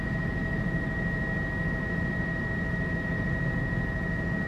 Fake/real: real